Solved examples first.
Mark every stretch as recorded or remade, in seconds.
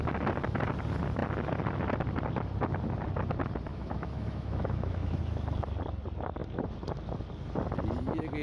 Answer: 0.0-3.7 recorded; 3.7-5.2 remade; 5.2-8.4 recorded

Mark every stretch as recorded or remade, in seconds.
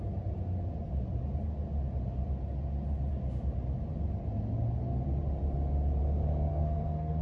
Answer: 0.0-6.5 recorded; 6.5-7.2 remade